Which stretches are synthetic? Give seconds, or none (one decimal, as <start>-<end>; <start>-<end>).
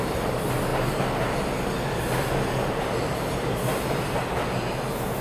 none